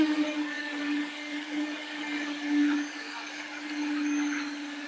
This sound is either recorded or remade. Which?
remade